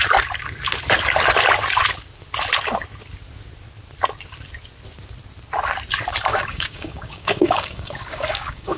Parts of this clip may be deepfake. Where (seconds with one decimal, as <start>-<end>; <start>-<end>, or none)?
6.3-8.8